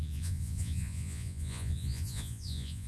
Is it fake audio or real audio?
fake